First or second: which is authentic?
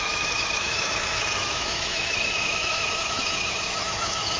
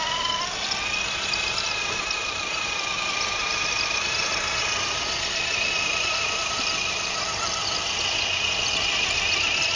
second